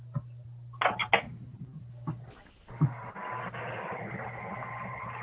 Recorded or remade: recorded